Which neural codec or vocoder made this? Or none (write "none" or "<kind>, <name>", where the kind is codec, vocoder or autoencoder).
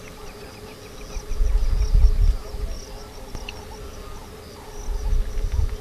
none